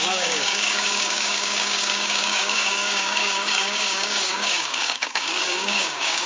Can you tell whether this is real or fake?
fake